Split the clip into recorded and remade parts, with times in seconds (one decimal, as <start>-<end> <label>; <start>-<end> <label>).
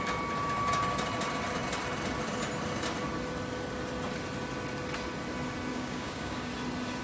0.0-5.7 recorded; 5.7-6.5 remade; 6.5-7.0 recorded